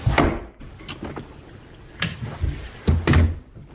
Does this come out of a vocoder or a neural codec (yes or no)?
no